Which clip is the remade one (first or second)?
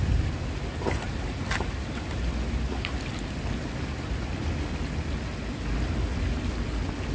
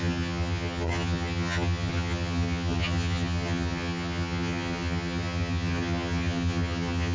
second